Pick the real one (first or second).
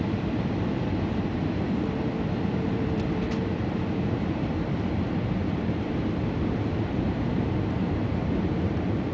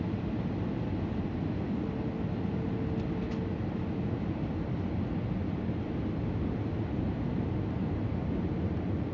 second